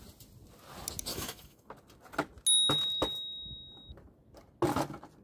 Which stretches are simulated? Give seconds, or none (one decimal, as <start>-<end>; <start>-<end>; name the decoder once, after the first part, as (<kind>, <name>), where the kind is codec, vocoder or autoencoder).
1.1-1.7 (autoencoder, DAC-VAE)